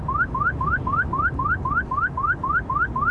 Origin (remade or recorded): recorded